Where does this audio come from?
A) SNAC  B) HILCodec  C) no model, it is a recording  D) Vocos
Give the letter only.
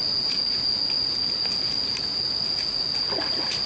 C